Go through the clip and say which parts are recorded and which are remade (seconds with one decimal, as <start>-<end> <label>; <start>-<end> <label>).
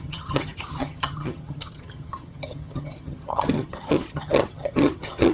0.0-5.3 remade